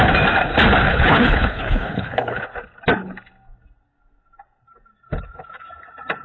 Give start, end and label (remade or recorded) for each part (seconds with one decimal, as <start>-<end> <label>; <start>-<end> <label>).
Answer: 0.0-0.9 recorded; 0.9-2.4 remade; 2.4-6.2 recorded